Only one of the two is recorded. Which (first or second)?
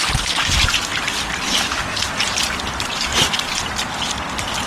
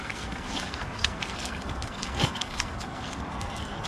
first